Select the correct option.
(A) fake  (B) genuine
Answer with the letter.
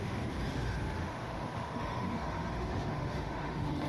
A